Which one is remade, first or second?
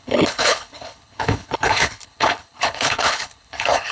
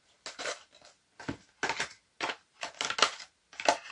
first